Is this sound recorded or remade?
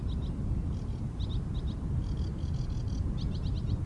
recorded